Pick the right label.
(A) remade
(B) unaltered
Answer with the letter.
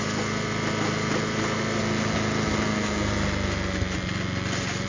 B